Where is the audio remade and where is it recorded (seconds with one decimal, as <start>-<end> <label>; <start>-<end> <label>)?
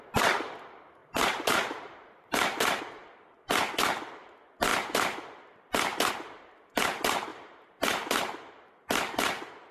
0.0-1.0 recorded; 1.0-2.8 remade; 2.8-7.3 recorded; 7.3-8.7 remade; 8.7-9.7 recorded